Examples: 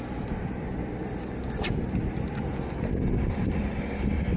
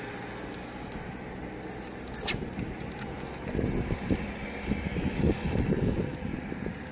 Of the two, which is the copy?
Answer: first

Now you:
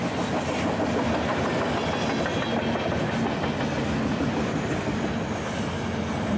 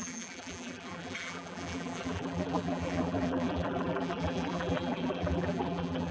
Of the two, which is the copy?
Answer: second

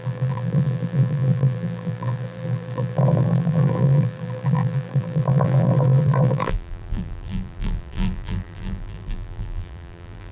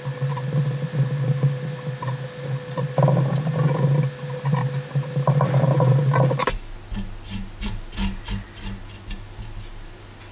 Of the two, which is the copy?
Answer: first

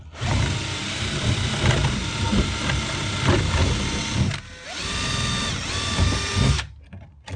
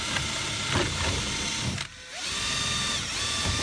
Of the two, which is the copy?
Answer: second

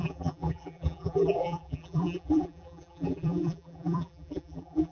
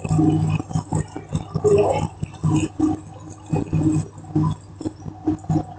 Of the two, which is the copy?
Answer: first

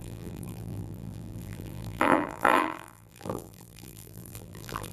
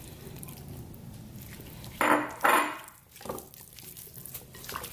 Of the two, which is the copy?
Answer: first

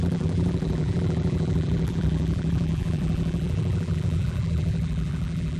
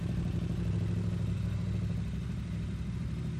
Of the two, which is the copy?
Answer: first